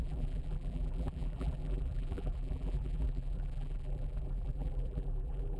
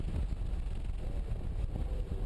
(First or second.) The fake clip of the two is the first